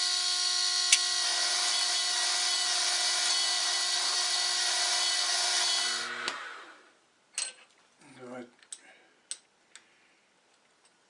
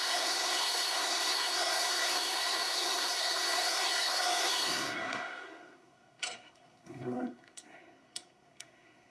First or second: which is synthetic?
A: second